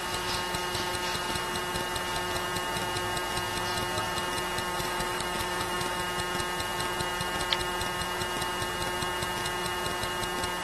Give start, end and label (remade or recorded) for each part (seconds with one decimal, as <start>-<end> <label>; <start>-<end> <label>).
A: 0.0-4.7 recorded; 4.7-6.0 remade; 6.0-10.6 recorded